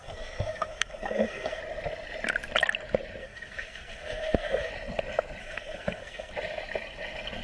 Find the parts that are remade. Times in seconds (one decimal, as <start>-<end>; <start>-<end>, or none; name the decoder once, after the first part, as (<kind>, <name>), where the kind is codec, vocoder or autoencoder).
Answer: 0.0-1.6 (codec, SNAC); 3.2-4.7; 5.4-6.3